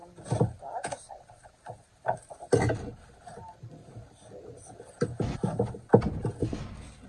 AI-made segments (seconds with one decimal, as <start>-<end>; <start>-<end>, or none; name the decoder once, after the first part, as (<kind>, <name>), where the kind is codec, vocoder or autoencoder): none